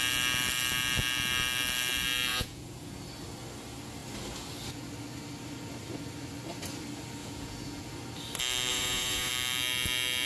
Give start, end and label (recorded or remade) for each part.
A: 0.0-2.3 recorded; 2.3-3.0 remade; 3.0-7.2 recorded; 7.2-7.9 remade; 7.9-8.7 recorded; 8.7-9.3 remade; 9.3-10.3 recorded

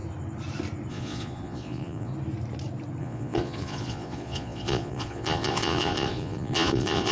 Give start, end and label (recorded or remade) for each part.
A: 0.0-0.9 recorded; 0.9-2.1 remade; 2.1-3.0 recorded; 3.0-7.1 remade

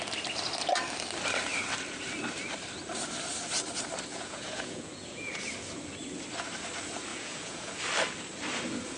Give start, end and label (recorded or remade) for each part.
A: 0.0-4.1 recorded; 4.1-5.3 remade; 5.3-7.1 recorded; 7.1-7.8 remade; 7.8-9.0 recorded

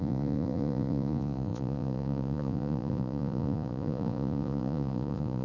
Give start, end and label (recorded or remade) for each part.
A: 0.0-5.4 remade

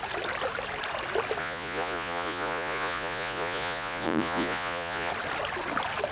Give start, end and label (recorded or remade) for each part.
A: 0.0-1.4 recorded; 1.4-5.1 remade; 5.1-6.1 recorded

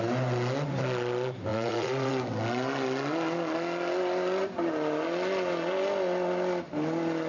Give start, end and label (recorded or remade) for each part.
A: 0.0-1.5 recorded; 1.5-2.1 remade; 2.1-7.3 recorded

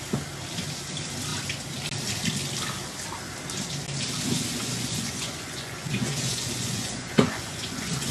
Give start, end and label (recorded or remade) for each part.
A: 0.0-4.3 recorded; 4.3-8.1 remade

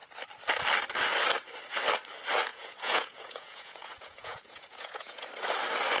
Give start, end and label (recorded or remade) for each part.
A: 0.0-2.5 recorded; 2.5-5.3 remade; 5.3-6.0 recorded